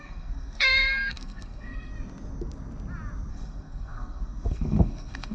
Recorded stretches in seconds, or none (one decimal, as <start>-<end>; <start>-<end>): 1.9-3.3